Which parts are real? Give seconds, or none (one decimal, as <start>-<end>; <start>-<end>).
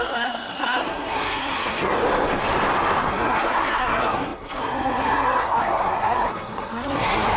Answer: 2.0-3.1